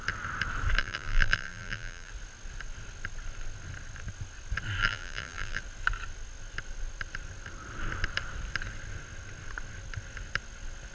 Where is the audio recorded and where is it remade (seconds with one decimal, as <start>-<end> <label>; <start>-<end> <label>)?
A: 0.0-0.8 recorded; 0.8-2.1 remade; 2.1-4.8 recorded; 4.8-5.6 remade; 5.6-10.9 recorded